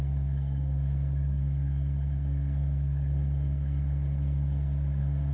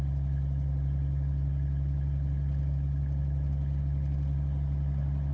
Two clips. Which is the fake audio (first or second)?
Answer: first